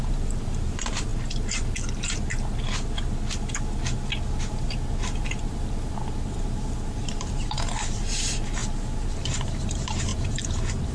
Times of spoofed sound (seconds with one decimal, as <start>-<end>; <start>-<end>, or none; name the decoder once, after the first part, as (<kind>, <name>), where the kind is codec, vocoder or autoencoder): 0.0-1.1 (vocoder, BigVGAN v2); 4.4-10.9